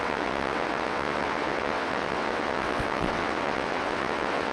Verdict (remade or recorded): remade